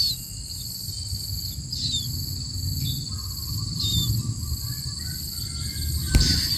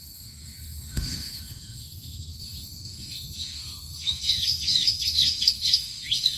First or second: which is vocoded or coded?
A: second